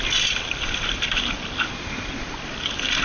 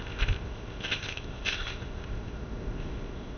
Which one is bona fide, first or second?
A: first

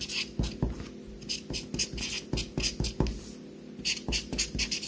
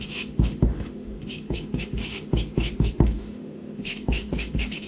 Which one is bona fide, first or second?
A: first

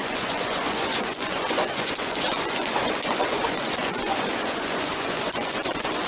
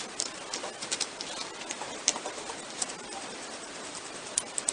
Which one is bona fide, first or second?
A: second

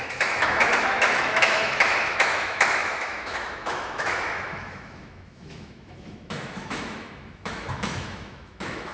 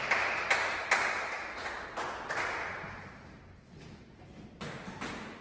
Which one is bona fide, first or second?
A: second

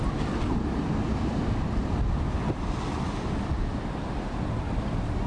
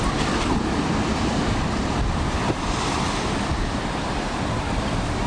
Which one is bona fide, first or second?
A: first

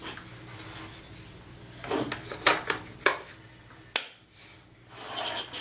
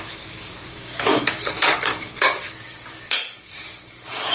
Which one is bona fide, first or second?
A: first